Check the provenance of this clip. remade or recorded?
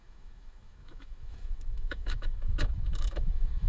remade